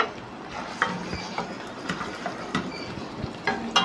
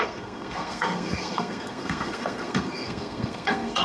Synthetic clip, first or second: second